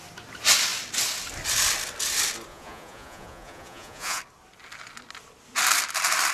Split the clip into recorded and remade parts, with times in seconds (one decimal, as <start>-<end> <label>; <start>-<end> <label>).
0.0-2.5 recorded; 2.5-4.2 remade; 4.2-6.3 recorded